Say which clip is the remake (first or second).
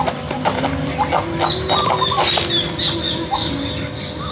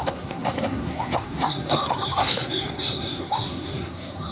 second